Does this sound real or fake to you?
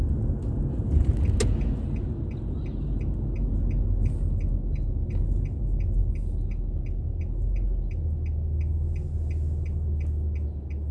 real